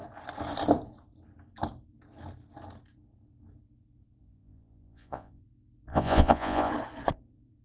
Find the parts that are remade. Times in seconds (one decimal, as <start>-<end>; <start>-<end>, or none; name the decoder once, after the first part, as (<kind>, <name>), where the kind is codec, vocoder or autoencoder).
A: 4.2-5.4 (vocoder, Vocos); 5.9-6.7